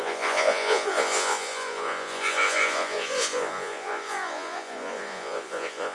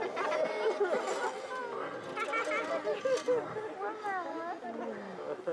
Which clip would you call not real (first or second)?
first